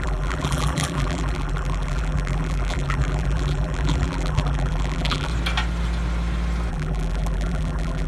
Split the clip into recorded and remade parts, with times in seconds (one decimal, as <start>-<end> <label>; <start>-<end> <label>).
0.0-5.3 remade; 5.3-6.7 recorded; 6.7-8.1 remade